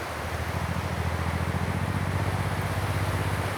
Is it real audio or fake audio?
real